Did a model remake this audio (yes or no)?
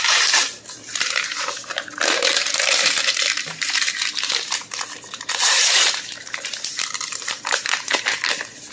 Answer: yes